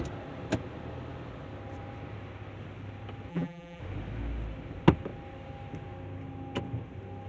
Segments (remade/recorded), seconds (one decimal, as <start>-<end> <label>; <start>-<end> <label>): 0.0-3.3 recorded; 3.3-3.8 remade; 3.8-7.3 recorded